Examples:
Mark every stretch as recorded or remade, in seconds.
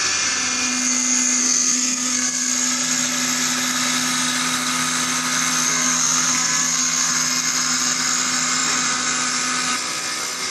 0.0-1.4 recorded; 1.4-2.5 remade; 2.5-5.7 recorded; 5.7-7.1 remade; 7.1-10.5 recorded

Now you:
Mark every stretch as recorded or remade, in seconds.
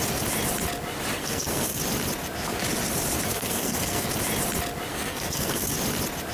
0.0-1.2 recorded; 1.2-1.8 remade; 1.8-3.3 recorded; 3.3-4.1 remade; 4.1-4.9 recorded; 4.9-5.7 remade; 5.7-6.3 recorded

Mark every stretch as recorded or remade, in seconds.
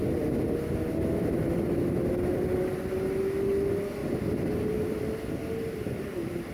0.0-6.5 recorded